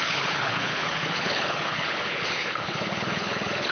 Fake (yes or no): yes